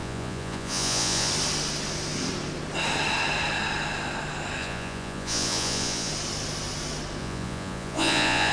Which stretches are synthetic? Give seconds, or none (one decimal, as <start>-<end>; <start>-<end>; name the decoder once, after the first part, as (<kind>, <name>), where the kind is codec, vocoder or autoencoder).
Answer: 0.0-1.3 (vocoder, Vocos); 4.6-6.1; 7.2-8.5